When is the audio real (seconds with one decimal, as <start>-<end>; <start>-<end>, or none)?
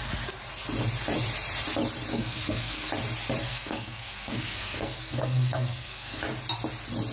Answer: 0.0-2.1; 2.9-3.4; 6.2-7.1